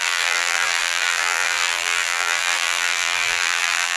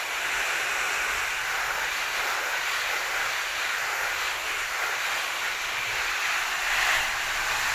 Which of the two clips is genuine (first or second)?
second